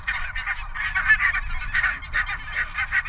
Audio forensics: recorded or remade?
recorded